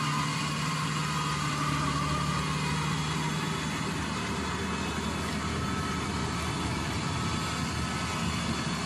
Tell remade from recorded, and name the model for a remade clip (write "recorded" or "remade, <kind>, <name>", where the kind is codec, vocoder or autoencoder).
recorded